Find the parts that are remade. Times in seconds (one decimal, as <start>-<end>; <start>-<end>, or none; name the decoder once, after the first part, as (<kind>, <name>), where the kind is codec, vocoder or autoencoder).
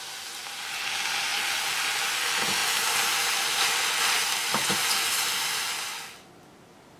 none